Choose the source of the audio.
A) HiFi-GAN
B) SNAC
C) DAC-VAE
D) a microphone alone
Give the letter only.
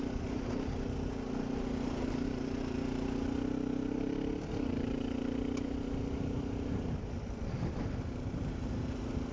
D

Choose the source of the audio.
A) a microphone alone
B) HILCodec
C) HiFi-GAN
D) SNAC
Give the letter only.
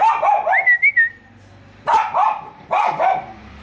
A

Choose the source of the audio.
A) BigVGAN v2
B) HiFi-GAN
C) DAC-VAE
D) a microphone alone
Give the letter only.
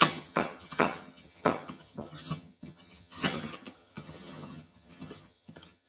B